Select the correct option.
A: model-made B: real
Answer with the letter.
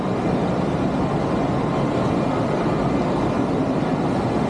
B